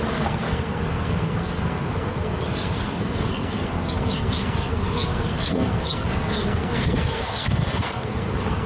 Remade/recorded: remade